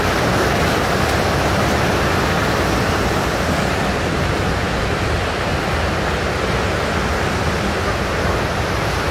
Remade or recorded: recorded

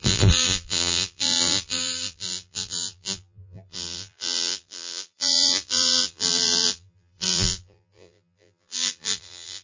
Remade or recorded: remade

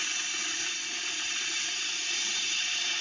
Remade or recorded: recorded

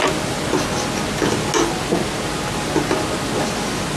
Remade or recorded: recorded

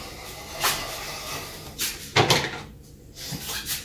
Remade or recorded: recorded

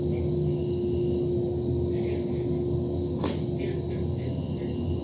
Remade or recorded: recorded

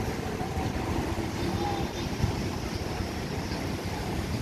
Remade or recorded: recorded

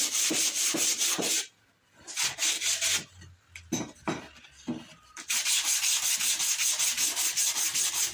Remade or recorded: recorded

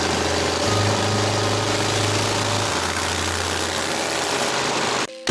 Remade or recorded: recorded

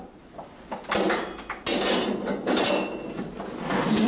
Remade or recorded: recorded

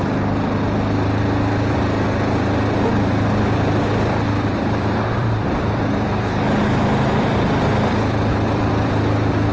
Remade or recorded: remade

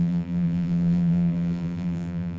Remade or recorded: remade